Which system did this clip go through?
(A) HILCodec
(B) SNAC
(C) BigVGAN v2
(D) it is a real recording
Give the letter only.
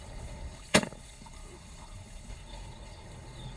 A